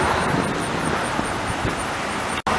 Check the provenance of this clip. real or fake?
real